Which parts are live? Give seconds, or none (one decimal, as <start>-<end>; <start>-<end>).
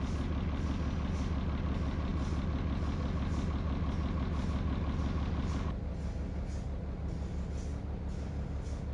0.0-8.9